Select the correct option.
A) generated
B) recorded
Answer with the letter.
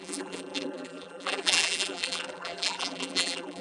A